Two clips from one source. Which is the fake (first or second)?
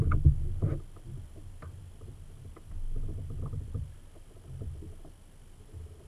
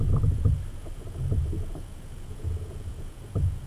second